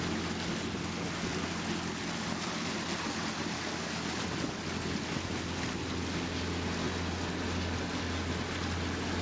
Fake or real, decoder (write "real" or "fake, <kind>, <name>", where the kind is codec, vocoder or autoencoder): real